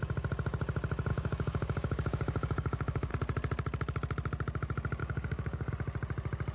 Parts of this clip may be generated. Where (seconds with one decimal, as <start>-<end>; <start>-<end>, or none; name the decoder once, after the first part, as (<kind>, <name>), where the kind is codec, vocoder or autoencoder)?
1.1-3.1 (codec, DAC); 5.0-5.7